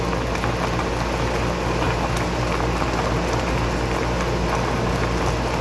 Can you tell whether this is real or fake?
real